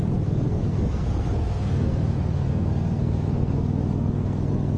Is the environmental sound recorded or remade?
remade